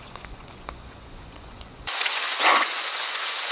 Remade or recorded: remade